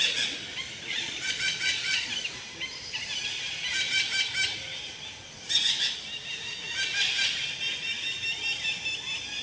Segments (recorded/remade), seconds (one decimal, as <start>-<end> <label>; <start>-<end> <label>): 0.0-0.9 recorded; 0.9-2.1 remade; 2.1-9.4 recorded